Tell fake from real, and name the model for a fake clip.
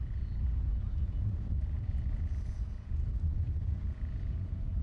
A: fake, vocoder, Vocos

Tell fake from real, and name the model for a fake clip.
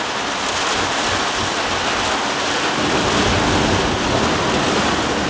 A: real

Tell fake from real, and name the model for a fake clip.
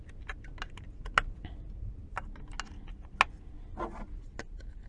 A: real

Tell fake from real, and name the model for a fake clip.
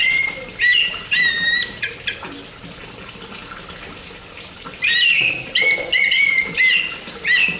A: real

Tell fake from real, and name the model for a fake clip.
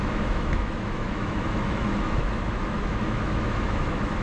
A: fake, autoencoder, DAC-VAE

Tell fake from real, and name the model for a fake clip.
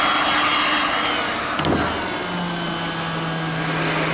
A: real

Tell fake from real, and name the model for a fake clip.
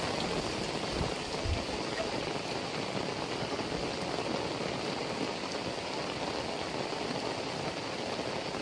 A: real